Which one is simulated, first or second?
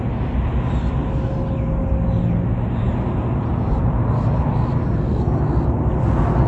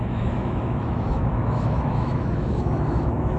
second